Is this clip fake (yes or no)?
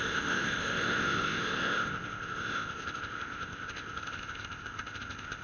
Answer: yes